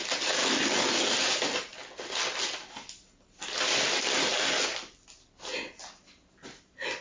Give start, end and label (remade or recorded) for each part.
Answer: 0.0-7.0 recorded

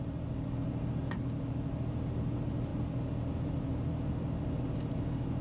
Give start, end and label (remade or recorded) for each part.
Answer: 0.0-5.4 recorded

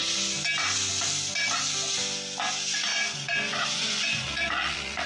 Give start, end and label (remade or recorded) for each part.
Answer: 0.0-2.9 recorded; 2.9-5.1 remade

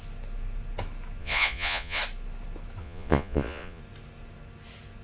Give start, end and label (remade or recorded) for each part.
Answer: 0.0-1.2 recorded; 1.2-2.0 remade; 2.0-2.8 recorded; 2.8-3.8 remade; 3.8-5.0 recorded

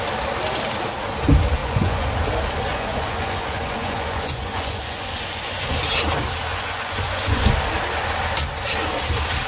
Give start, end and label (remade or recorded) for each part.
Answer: 0.0-1.6 recorded; 1.6-2.1 remade; 2.1-2.7 recorded; 2.7-5.8 remade; 5.8-6.5 recorded; 6.5-7.5 remade; 7.5-9.5 recorded

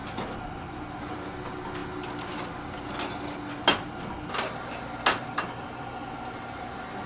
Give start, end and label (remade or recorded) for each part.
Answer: 0.0-7.1 recorded

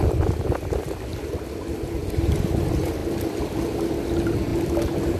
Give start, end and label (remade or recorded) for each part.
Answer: 0.0-5.2 recorded

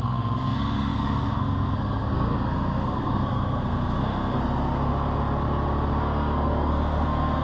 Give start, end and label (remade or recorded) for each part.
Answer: 0.0-4.9 remade; 4.9-6.0 recorded; 6.0-7.4 remade